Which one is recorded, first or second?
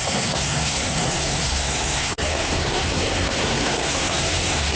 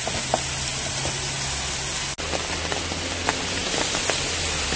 second